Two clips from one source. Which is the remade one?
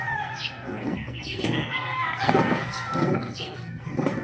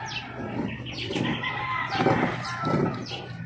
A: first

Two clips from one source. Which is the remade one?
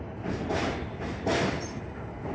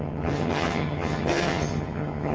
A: second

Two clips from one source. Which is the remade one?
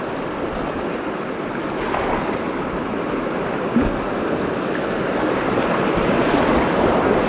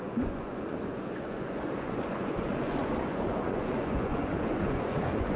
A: second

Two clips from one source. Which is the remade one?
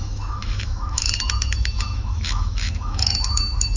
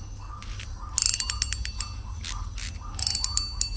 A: first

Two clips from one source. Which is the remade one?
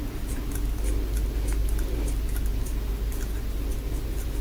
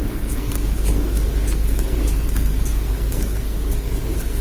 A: second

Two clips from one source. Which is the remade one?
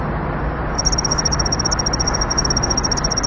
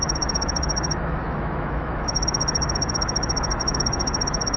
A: second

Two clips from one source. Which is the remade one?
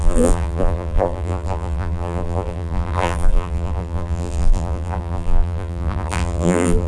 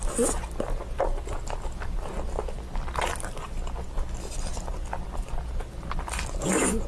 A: first